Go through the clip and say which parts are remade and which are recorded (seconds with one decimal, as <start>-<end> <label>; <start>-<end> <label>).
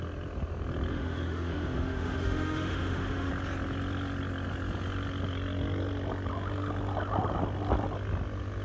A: 0.0-0.9 recorded; 0.9-3.3 remade; 3.3-8.6 recorded